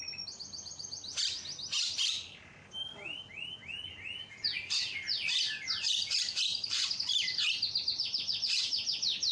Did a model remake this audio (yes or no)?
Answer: no